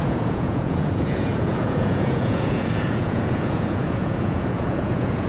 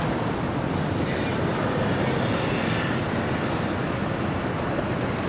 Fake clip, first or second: first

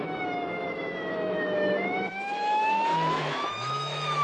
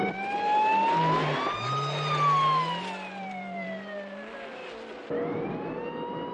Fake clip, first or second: first